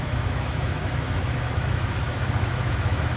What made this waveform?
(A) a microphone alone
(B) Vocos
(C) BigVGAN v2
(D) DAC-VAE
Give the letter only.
D